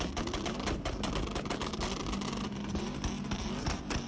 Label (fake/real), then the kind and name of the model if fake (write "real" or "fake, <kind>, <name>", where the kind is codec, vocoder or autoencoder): real